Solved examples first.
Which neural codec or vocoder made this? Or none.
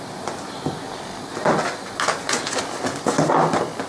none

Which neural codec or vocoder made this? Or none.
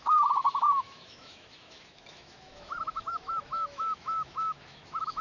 autoencoder, DAC-VAE